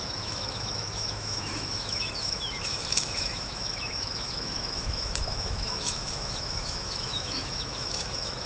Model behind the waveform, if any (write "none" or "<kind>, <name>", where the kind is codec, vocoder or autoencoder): autoencoder, DAC-VAE